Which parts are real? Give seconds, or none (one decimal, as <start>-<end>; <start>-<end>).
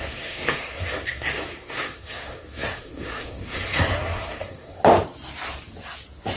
4.7-6.4